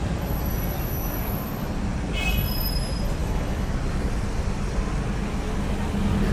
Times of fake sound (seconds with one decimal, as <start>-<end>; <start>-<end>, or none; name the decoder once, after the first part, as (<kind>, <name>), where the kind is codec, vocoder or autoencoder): 3.2-3.7 (autoencoder, DAC-VAE)